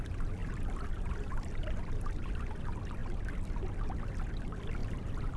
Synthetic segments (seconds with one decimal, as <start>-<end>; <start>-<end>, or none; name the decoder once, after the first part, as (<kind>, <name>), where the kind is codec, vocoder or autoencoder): 0.4-2.5 (vocoder, BigVGAN v2); 4.8-5.4